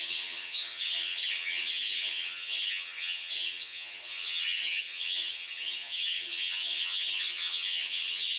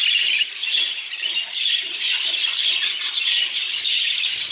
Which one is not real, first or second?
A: first